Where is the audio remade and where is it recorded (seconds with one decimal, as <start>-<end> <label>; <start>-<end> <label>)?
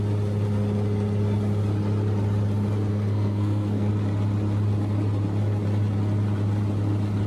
0.0-2.9 recorded; 2.9-3.9 remade; 3.9-7.3 recorded